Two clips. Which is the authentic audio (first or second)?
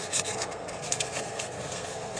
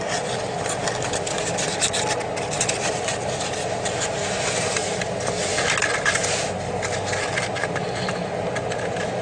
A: second